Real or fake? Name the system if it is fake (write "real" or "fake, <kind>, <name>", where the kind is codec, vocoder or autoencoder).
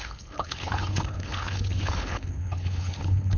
fake, codec, HILCodec